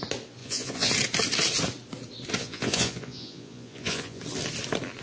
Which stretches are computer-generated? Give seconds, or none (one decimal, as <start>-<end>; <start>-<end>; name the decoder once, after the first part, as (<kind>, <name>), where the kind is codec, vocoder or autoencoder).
0.4-0.9 (vocoder, Vocos); 2.4-4.2